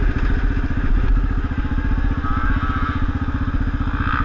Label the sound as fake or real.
real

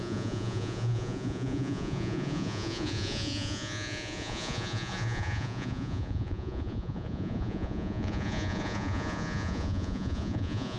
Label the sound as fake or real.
fake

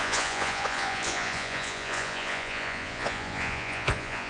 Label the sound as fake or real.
fake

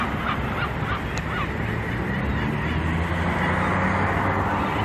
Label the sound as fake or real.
real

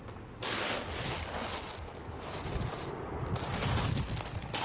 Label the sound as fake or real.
real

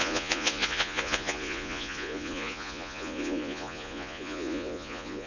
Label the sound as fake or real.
fake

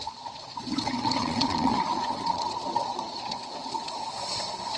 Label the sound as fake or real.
fake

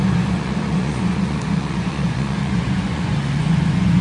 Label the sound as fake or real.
fake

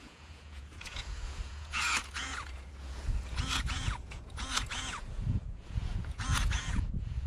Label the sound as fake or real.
fake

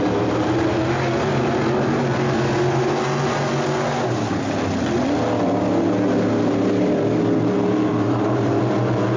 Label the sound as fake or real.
real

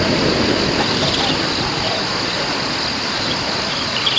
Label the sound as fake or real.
real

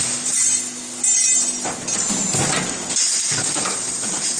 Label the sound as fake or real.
real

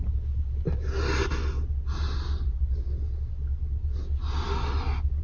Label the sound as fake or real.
real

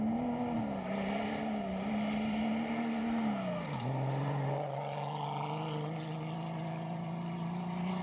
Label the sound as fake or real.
real